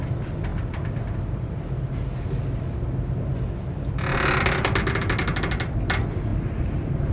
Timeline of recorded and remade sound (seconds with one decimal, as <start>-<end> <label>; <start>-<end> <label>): 0.0-7.1 recorded